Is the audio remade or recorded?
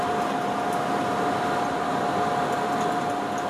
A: recorded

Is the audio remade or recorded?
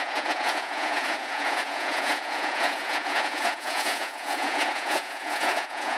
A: remade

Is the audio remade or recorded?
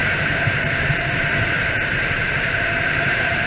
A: remade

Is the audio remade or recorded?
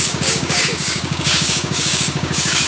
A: remade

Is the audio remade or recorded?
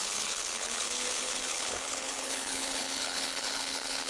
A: remade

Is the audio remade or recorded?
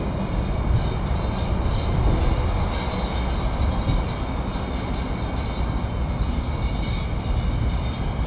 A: recorded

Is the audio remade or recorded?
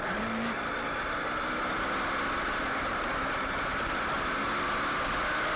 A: recorded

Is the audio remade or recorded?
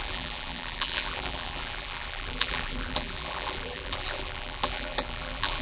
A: remade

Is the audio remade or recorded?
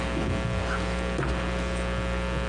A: recorded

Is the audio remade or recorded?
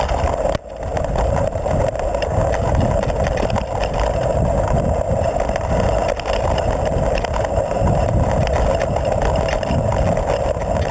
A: recorded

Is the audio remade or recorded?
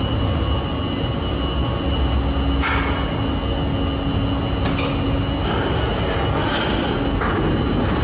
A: recorded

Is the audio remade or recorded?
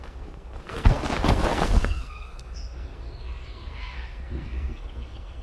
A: remade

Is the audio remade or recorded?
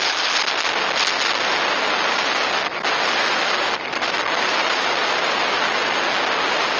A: recorded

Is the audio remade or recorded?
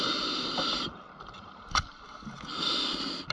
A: recorded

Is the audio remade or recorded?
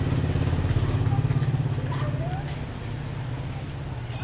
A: recorded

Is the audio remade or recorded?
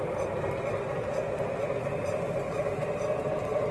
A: recorded